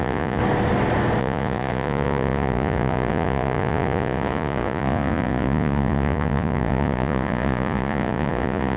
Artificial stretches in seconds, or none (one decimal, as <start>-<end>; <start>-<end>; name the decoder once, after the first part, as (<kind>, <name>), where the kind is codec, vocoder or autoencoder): 0.0-0.4 (vocoder, Vocos); 1.2-8.8